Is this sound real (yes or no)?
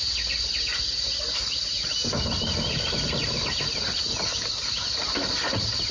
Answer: yes